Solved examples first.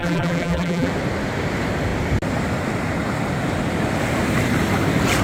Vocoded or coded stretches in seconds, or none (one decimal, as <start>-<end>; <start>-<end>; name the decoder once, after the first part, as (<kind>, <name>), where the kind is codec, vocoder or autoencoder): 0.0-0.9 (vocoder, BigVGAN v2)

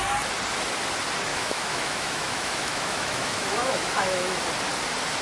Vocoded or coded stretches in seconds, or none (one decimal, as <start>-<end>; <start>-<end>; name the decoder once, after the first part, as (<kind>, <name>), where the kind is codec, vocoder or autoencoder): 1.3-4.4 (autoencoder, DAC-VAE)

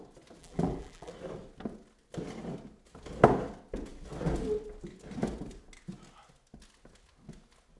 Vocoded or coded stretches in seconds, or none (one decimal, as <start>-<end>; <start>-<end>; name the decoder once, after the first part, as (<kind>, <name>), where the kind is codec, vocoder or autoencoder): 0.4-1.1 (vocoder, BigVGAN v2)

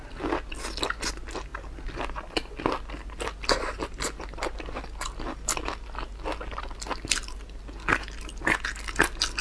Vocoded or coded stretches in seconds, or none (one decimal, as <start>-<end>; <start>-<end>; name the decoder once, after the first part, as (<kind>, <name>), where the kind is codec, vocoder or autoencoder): none